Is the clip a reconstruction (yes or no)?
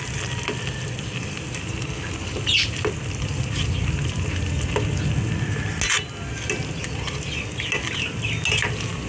no